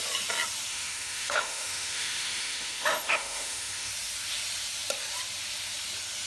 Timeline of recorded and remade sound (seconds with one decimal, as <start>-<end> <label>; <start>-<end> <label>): 0.0-0.7 recorded; 0.7-3.9 remade; 3.9-6.3 recorded